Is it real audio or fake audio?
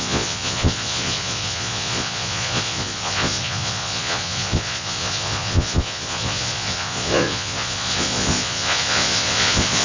fake